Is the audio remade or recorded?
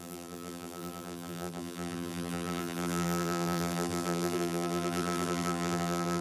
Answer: remade